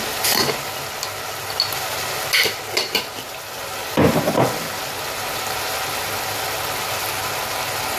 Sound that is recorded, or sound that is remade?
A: recorded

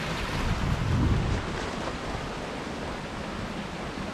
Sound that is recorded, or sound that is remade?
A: recorded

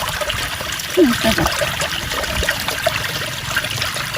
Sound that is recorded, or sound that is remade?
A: remade